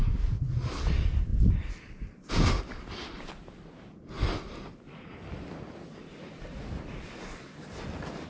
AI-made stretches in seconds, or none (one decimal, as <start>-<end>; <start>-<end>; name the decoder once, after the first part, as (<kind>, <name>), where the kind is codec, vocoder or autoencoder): none